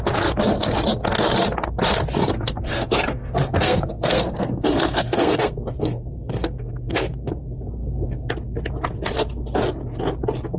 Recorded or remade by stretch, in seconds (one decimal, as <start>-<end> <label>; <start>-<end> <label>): 0.0-2.2 recorded; 2.2-7.3 remade; 7.3-7.8 recorded; 7.8-8.3 remade; 8.3-10.6 recorded

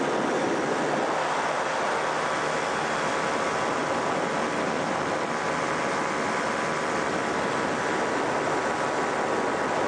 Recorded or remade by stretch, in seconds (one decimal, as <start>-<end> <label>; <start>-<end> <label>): 0.0-3.8 recorded; 3.8-7.3 remade; 7.3-9.9 recorded

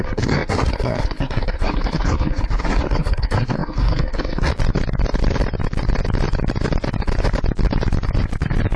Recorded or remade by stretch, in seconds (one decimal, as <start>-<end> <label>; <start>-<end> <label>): 0.0-4.5 remade; 4.5-8.8 recorded

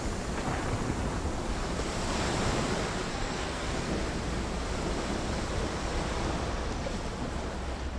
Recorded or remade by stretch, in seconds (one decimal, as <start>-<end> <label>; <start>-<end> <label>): 0.0-3.1 recorded; 3.1-3.9 remade; 3.9-8.0 recorded